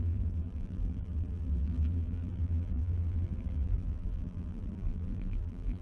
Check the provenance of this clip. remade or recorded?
remade